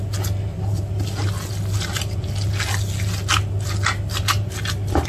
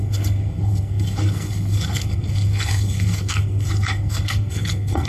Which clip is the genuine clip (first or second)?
first